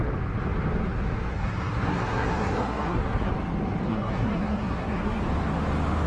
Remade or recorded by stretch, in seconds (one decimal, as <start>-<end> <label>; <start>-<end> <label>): 0.0-1.3 recorded; 1.3-3.3 remade; 3.3-3.9 recorded; 3.9-5.2 remade; 5.2-6.1 recorded